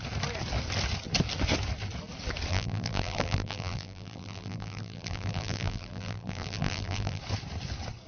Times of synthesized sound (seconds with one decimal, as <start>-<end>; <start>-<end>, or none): 2.5-7.2